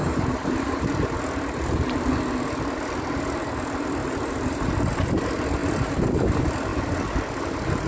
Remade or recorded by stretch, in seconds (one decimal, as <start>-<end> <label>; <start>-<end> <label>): 0.0-0.8 remade; 0.8-4.0 recorded; 4.0-4.7 remade; 4.7-5.6 recorded; 5.6-6.3 remade; 6.3-7.9 recorded